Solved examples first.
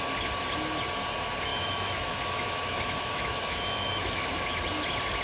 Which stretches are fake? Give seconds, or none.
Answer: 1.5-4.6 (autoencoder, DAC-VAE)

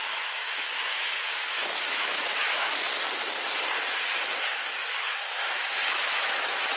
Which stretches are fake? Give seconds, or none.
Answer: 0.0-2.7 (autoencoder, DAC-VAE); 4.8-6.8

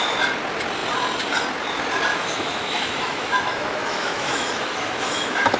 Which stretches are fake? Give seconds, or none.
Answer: 2.1-5.6 (autoencoder, DAC-VAE)